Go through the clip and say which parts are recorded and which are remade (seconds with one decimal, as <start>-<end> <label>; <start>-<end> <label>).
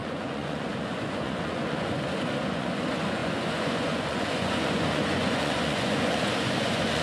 0.0-7.0 remade